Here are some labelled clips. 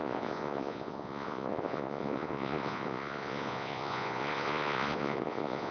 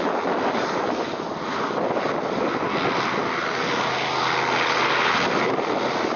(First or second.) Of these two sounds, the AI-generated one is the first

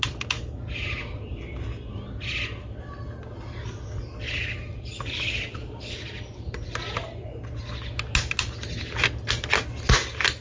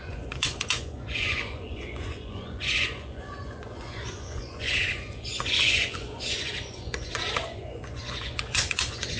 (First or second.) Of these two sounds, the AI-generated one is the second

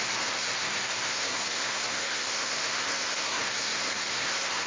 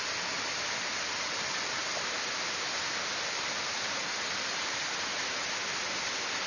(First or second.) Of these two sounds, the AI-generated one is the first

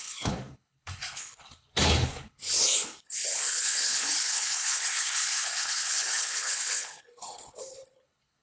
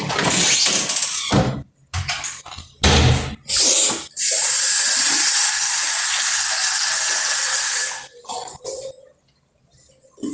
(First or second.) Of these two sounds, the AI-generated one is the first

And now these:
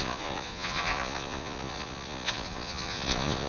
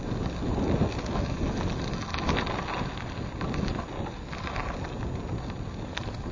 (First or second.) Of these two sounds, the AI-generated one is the first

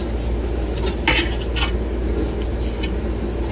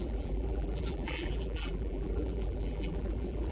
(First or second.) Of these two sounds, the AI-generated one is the second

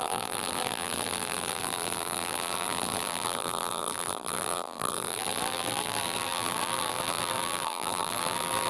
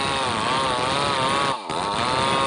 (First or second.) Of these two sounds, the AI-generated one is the first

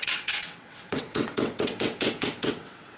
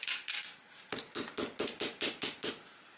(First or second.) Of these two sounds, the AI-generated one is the first